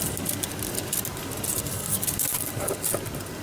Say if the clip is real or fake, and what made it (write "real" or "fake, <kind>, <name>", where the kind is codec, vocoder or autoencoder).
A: real